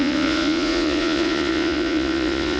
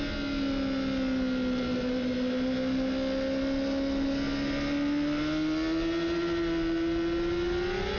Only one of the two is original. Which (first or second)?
second